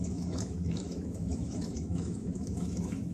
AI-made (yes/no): yes